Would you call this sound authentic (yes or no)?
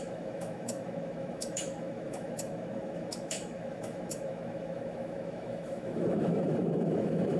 no